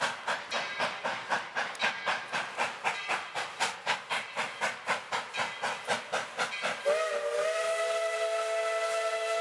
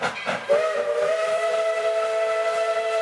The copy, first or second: second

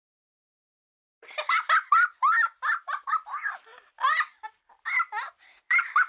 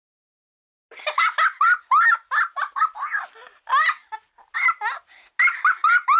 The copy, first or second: first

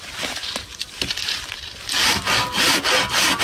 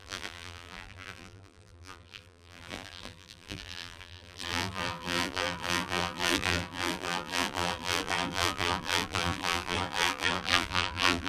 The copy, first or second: second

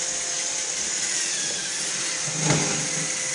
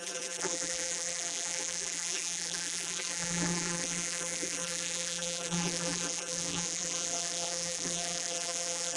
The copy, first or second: second